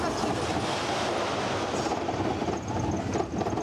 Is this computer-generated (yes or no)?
no